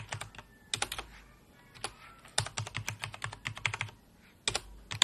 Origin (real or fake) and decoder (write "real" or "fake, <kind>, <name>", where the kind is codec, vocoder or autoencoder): real